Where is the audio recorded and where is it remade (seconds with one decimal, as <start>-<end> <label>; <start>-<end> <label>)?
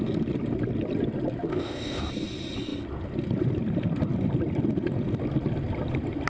0.0-1.5 recorded; 1.5-2.0 remade; 2.0-6.3 recorded